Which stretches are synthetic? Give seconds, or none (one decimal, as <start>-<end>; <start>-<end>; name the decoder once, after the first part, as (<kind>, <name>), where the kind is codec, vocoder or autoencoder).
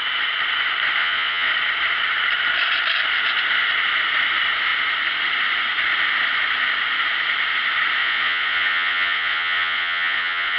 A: 1.0-1.5 (vocoder, Vocos); 8.0-10.6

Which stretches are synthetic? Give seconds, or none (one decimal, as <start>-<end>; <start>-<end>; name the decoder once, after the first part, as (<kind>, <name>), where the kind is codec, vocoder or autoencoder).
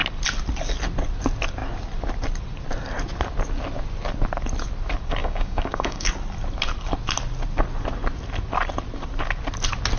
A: 5.2-6.1 (codec, DAC)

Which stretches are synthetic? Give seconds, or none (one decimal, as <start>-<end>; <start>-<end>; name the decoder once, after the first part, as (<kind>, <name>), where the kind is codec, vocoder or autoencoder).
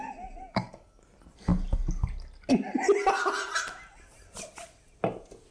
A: 0.4-1.0 (codec, DAC)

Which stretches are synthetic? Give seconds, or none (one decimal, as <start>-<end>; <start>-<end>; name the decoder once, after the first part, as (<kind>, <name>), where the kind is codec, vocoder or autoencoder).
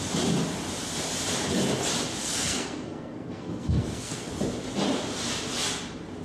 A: 2.2-4.3 (codec, SNAC)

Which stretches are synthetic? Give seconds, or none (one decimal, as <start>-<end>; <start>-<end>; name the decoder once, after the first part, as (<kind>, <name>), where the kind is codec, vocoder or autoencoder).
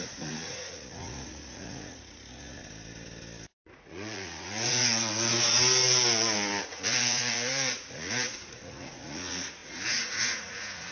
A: 0.0-2.6 (vocoder, Vocos); 3.6-5.3; 6.6-10.9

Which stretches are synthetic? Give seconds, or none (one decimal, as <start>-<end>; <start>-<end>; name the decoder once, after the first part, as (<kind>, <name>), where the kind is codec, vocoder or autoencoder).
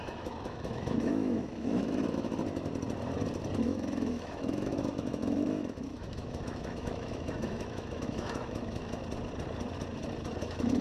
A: 0.0-2.3 (autoencoder, DAC-VAE); 3.6-9.0; 10.4-10.8